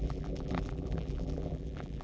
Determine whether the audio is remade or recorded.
remade